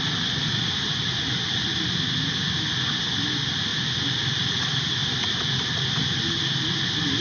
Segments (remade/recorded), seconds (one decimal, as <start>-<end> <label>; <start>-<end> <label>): 0.0-7.2 recorded